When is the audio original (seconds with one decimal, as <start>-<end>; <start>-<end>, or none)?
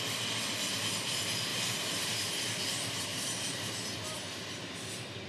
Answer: 0.0-1.5; 2.3-3.1; 3.7-5.3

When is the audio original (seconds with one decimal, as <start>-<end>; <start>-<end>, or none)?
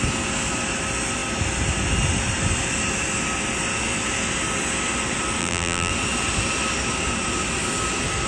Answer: 0.0-5.4; 5.9-8.3